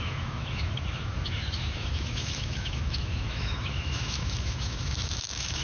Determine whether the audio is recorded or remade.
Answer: remade